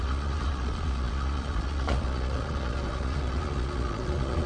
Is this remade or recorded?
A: remade